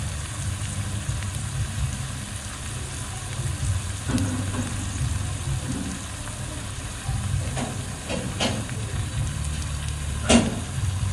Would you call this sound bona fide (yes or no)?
yes